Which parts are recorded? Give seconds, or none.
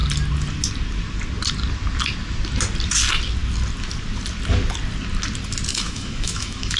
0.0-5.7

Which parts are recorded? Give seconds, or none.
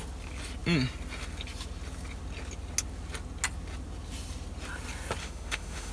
0.0-5.2